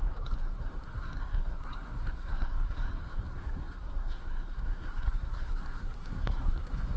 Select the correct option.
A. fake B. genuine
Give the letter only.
A